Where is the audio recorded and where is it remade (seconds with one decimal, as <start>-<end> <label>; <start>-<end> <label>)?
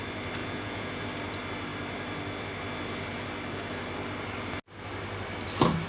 0.0-0.4 recorded; 0.4-1.0 remade; 1.0-5.9 recorded